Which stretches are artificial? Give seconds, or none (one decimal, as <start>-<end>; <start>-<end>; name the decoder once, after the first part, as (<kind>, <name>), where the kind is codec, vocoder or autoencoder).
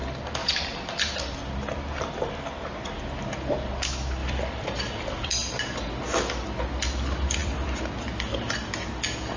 0.4-2.3 (vocoder, BigVGAN v2); 4.2-5.3; 7.4-8.5